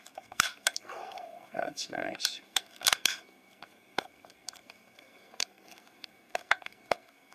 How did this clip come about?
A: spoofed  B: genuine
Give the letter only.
A